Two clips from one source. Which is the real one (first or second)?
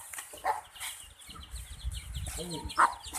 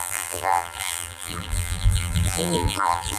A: first